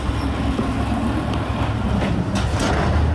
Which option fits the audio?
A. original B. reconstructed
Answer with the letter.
A